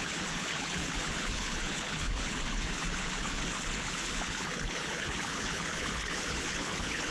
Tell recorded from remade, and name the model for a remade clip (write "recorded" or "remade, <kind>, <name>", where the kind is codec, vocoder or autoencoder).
remade, codec, HILCodec